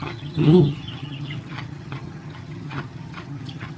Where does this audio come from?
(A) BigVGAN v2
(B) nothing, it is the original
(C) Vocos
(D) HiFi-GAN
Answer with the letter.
D